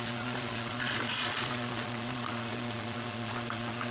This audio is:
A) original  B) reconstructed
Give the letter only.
B